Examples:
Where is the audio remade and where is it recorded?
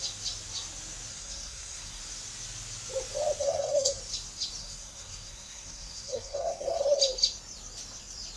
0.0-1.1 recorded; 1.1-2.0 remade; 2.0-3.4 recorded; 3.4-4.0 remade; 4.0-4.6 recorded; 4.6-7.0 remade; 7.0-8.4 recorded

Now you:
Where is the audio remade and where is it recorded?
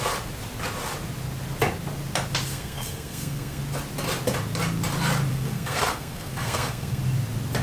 0.0-2.5 recorded; 2.5-3.6 remade; 3.6-5.3 recorded; 5.3-7.0 remade; 7.0-7.6 recorded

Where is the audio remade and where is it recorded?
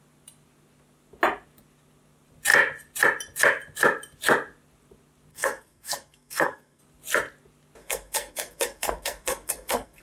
0.0-5.3 recorded; 5.3-6.8 remade; 6.8-7.8 recorded; 7.8-10.0 remade